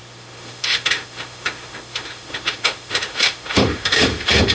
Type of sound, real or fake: fake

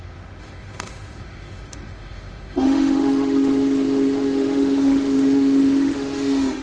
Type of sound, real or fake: fake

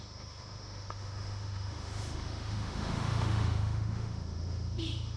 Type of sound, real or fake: fake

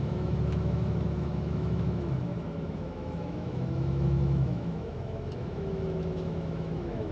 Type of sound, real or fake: fake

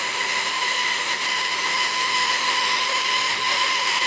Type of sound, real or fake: fake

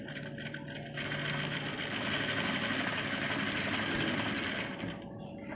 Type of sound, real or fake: real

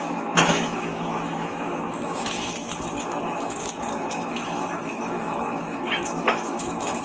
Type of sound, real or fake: fake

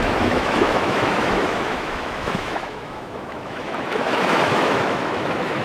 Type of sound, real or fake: fake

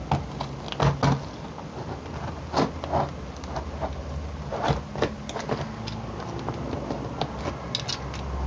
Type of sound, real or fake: real